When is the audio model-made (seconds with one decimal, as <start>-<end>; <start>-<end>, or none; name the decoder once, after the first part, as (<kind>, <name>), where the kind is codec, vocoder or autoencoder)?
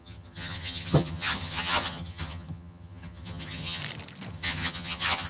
0.0-3.8 (vocoder, HiFi-GAN); 4.3-5.3